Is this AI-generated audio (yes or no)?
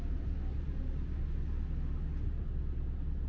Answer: no